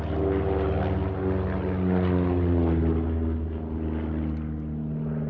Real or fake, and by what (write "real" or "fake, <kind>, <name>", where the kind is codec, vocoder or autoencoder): real